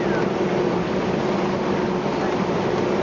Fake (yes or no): no